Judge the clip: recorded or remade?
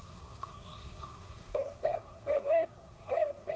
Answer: remade